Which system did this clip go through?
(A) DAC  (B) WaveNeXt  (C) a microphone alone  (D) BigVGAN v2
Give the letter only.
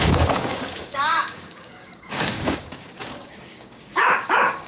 A